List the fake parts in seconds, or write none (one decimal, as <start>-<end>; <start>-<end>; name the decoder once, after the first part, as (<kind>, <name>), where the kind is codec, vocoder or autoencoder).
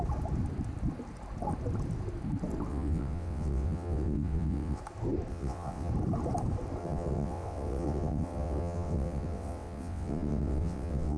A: 2.7-4.8 (vocoder, WaveNeXt); 5.3-5.9; 6.8-11.2